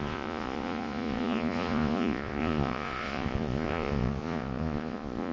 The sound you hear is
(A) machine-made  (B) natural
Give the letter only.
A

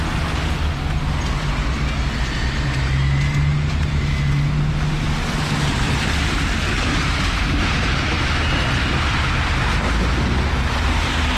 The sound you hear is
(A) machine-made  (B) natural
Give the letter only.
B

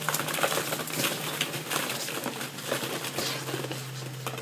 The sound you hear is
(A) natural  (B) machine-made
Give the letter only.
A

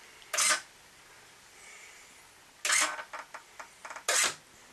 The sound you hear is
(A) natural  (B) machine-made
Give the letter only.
A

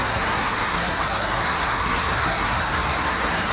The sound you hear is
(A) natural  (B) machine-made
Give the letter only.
B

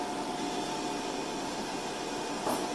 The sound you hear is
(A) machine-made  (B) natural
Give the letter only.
B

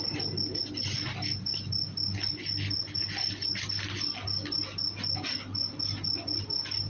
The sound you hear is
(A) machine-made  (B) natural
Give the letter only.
B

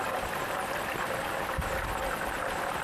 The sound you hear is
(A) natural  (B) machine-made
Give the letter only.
B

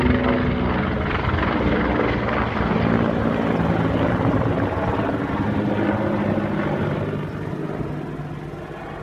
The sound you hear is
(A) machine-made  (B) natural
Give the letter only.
B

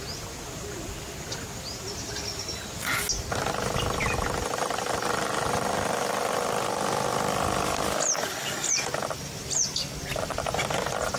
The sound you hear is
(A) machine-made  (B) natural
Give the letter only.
B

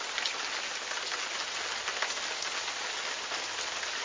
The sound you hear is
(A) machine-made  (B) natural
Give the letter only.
B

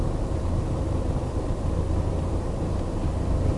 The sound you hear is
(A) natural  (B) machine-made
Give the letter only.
B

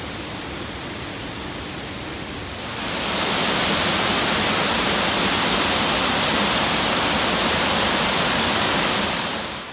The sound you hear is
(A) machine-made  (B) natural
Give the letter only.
B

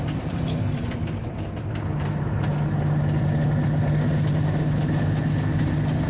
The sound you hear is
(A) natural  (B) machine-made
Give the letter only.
A